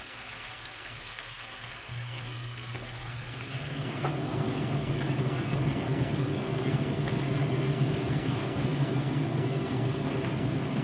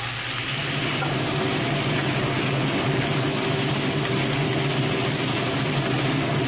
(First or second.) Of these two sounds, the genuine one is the second